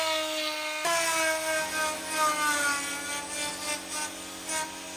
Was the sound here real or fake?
real